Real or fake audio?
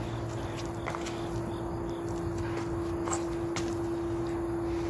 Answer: real